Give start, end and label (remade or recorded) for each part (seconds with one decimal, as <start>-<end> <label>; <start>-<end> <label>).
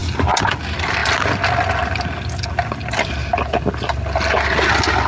0.0-5.1 recorded